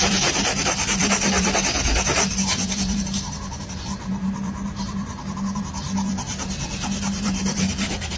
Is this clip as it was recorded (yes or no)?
no